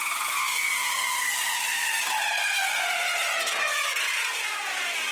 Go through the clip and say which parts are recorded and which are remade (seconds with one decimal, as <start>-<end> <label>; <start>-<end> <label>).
0.0-0.7 recorded; 0.7-1.8 remade; 1.8-4.1 recorded; 4.1-5.1 remade